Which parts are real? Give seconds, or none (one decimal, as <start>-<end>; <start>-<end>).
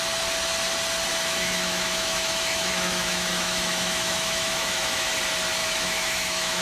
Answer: 0.0-1.1; 5.1-5.6